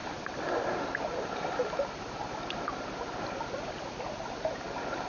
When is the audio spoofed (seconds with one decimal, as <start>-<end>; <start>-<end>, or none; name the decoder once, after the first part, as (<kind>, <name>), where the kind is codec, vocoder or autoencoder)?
none